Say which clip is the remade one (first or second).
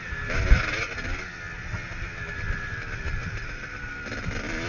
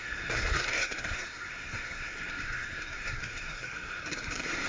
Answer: second